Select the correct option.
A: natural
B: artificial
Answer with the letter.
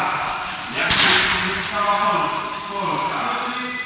A